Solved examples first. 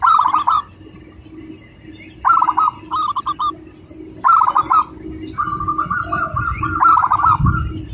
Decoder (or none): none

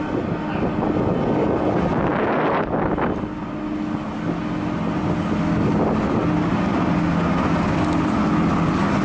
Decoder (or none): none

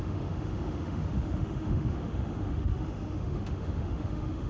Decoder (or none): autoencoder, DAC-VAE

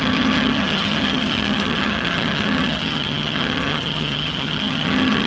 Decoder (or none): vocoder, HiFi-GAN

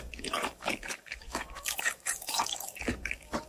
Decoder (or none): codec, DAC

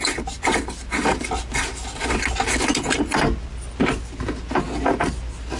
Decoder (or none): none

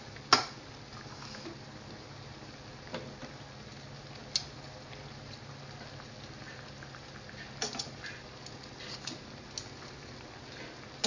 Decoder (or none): none